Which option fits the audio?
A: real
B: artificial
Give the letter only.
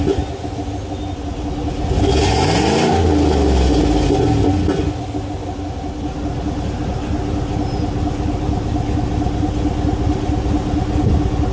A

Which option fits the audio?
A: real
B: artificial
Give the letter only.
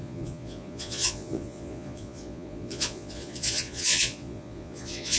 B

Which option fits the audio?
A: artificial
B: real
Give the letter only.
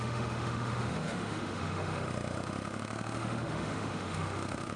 A